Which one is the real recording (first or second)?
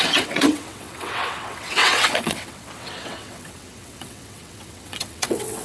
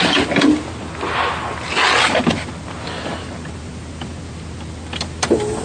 second